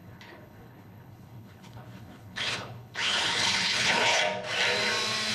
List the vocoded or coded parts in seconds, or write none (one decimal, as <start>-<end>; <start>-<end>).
0.0-4.2